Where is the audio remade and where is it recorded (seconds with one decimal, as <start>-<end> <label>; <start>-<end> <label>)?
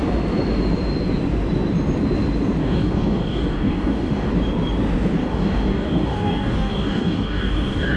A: 0.0-2.6 recorded; 2.6-4.3 remade; 4.3-5.2 recorded; 5.2-8.0 remade